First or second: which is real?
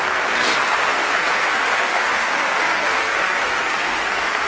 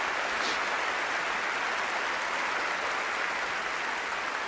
second